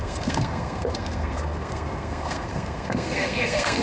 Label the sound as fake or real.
fake